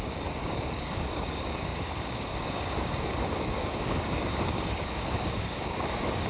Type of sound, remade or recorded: remade